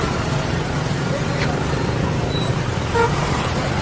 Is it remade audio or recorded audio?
remade